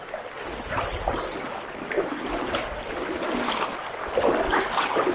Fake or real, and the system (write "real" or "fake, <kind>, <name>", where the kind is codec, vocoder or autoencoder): real